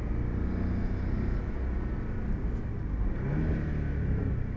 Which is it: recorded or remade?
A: recorded